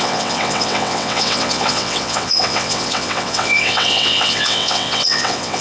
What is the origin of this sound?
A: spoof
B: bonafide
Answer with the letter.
A